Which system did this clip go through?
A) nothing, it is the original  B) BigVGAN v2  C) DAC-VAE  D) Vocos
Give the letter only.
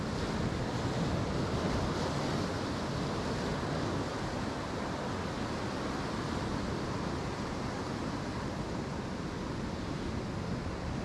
A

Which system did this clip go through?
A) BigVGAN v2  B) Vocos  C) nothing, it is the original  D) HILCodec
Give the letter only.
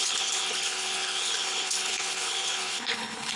D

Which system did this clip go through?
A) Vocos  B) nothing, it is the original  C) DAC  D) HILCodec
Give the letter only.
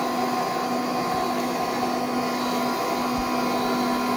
B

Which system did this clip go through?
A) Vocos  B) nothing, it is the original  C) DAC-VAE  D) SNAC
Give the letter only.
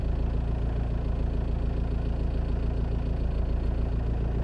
B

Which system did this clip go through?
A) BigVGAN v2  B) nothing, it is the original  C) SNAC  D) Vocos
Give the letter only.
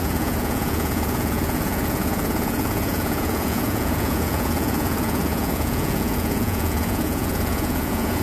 D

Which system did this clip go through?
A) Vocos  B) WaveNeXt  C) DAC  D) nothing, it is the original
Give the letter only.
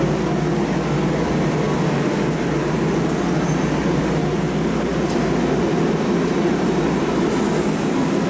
D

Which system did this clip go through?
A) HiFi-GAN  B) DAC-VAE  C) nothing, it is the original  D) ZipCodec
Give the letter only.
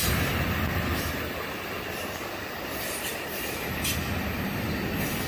C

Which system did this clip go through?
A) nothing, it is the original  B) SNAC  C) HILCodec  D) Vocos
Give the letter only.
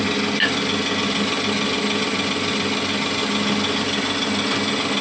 A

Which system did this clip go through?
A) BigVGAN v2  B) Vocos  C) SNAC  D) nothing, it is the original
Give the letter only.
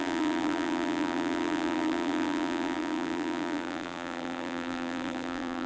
A